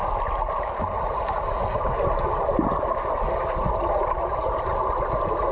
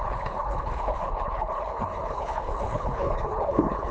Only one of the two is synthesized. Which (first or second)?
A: second